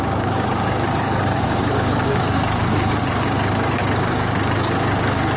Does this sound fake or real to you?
fake